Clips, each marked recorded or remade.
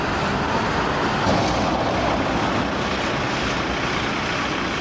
recorded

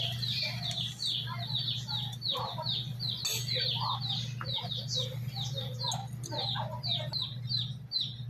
recorded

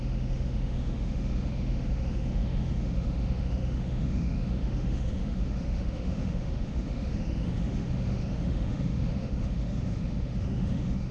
remade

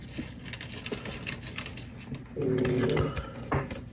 recorded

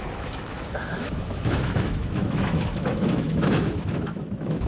remade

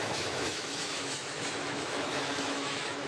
remade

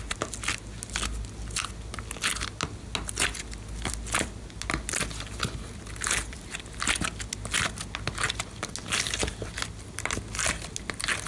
recorded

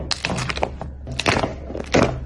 recorded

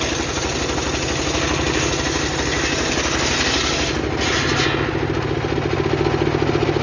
recorded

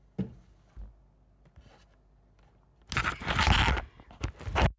recorded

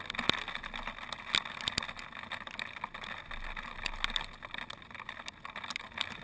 recorded